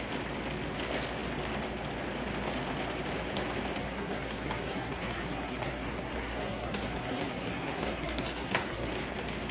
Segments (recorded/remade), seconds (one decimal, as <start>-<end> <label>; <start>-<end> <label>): 0.0-3.8 recorded; 3.8-8.9 remade; 8.9-9.5 recorded